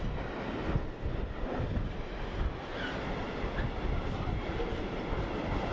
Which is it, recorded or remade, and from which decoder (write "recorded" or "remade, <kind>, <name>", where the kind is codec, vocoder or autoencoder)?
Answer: recorded